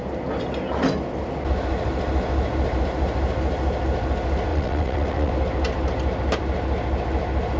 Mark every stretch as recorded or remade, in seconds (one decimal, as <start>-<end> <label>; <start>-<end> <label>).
0.0-4.5 recorded; 4.5-5.3 remade; 5.3-7.6 recorded